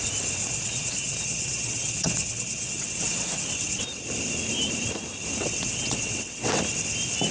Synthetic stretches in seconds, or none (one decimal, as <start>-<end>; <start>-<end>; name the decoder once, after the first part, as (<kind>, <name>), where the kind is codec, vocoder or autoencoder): 0.4-3.8 (vocoder, WaveNeXt); 5.4-6.6